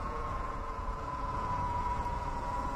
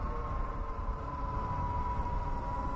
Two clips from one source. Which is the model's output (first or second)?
first